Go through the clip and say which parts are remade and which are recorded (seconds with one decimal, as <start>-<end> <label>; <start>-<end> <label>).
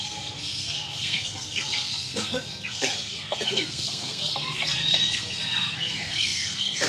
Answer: 0.0-6.9 remade